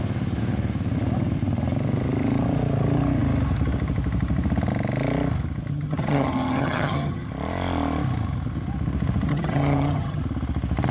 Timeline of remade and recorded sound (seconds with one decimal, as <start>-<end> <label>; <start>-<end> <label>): 0.0-5.7 recorded; 5.7-7.3 remade; 7.3-9.3 recorded; 9.3-10.2 remade; 10.2-10.9 recorded